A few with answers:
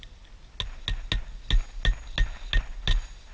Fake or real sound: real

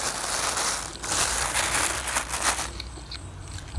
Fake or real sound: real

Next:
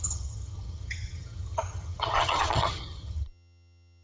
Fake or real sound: fake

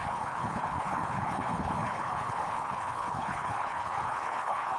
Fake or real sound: fake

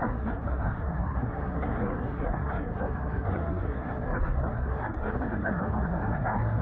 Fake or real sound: fake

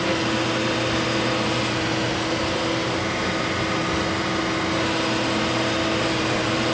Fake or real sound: real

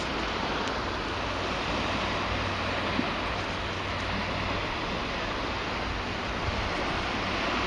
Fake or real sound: real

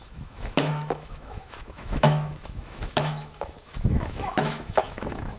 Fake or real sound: fake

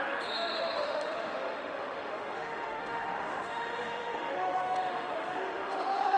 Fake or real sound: fake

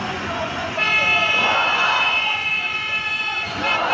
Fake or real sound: fake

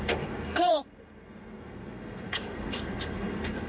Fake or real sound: fake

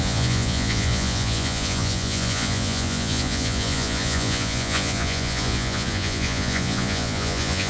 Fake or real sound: fake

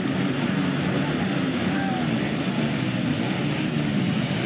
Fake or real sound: real